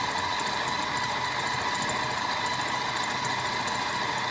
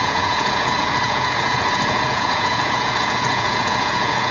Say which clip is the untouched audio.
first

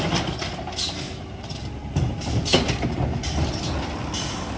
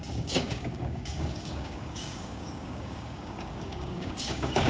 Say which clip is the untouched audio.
first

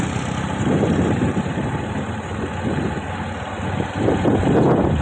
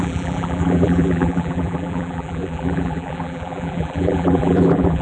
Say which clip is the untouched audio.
first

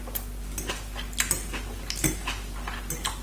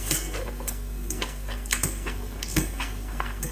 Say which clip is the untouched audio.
first